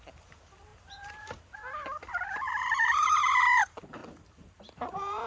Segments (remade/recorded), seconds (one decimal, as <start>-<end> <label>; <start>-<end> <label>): 0.0-4.0 remade; 4.0-4.7 recorded; 4.7-5.3 remade